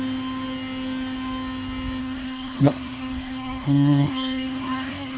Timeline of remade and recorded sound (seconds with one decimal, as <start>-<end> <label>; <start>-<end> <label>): 0.0-2.0 recorded; 2.0-5.2 remade